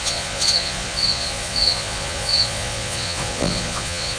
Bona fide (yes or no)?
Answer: no